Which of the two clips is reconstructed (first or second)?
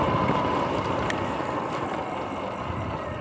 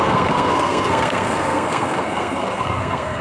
second